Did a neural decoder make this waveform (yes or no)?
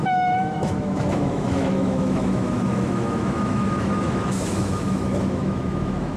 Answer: yes